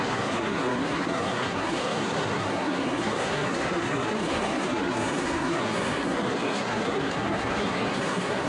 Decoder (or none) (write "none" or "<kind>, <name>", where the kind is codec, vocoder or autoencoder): codec, SNAC